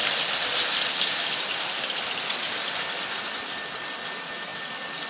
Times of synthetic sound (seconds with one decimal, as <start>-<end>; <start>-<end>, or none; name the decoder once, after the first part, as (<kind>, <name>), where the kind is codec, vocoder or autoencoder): 0.0-3.1 (vocoder, BigVGAN v2); 4.5-5.1